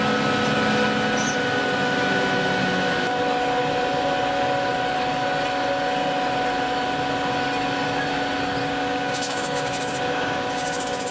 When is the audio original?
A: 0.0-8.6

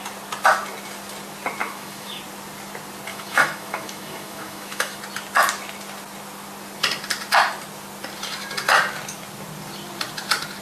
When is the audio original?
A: 0.0-1.6; 2.2-3.1; 5.0-10.6

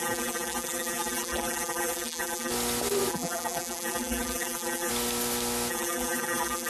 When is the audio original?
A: 2.5-3.1; 4.9-5.7

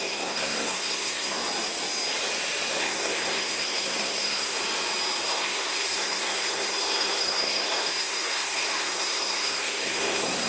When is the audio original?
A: 1.4-2.8; 4.6-5.2